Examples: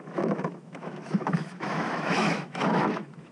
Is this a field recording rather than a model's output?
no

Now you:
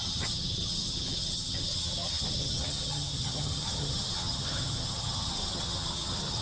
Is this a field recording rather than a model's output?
no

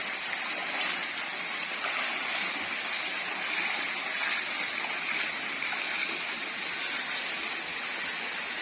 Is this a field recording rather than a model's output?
yes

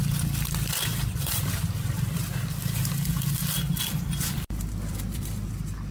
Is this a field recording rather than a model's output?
no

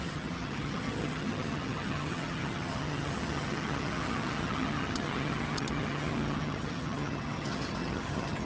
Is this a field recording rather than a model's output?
no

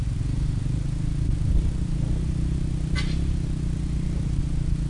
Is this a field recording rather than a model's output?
yes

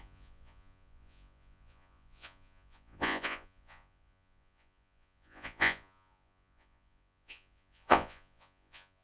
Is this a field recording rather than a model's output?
no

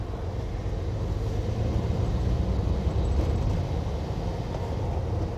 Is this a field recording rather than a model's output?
yes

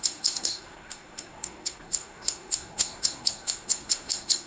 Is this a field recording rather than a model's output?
no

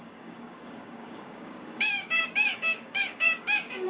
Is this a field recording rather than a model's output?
no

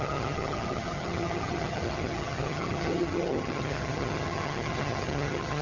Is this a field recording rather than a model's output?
no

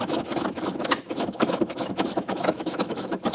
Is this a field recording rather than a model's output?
no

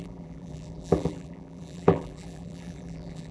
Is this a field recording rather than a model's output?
no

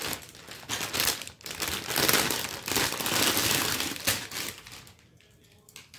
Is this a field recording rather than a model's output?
yes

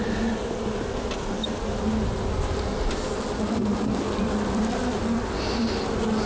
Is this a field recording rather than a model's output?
yes